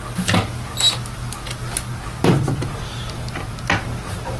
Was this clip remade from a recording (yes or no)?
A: no